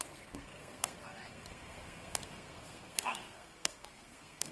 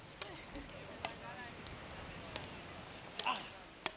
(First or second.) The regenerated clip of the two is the first